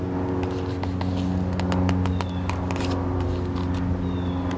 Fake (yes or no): no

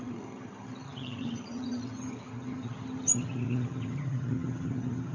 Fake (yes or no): yes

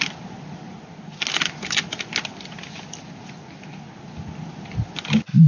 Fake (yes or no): no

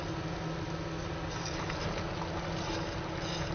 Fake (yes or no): no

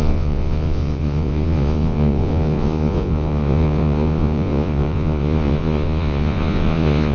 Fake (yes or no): yes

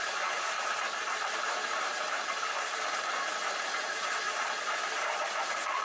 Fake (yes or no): yes